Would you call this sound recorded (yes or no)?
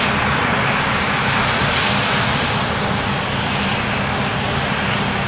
yes